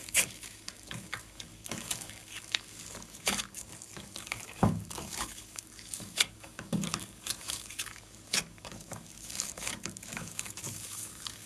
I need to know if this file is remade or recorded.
remade